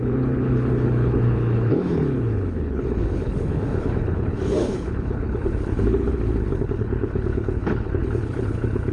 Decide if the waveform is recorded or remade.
remade